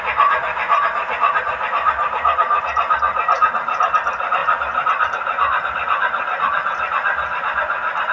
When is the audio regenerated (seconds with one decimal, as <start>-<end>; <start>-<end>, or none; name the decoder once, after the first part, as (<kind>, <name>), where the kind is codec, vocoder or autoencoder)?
none